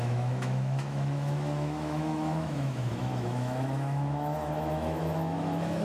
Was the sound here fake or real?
fake